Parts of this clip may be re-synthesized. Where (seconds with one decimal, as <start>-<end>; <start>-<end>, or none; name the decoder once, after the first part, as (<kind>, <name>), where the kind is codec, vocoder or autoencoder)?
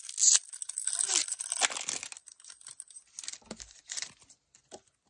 none